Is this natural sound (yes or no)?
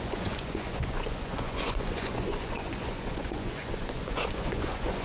no